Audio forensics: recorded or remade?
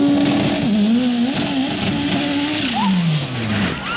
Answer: recorded